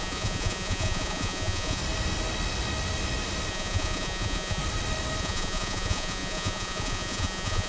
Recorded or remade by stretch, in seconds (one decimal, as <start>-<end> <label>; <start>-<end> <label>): 0.0-1.8 remade; 1.8-3.5 recorded; 3.5-4.6 remade; 4.6-5.2 recorded; 5.2-7.7 remade